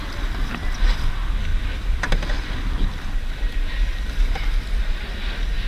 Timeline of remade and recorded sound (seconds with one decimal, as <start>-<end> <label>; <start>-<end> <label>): 0.0-5.7 recorded